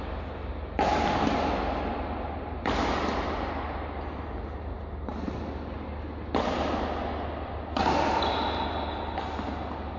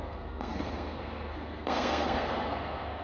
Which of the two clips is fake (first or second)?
second